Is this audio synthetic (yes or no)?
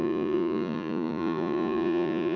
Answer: yes